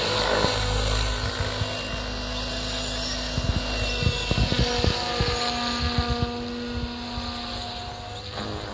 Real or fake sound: real